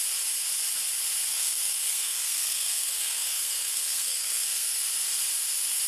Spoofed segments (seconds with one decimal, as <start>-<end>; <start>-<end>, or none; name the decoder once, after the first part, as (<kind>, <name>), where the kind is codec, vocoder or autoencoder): 1.3-4.8 (codec, SNAC)